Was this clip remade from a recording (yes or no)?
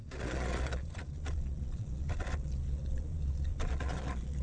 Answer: yes